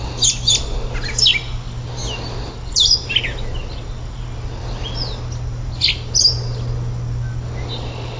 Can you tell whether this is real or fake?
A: real